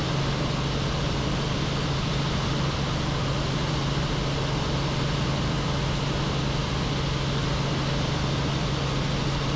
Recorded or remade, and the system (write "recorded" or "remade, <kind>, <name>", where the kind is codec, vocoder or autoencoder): recorded